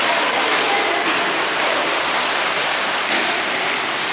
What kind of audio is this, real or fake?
real